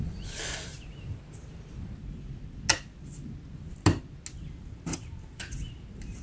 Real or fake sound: real